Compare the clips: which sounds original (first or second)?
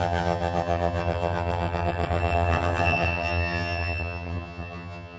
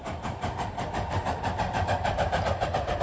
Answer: second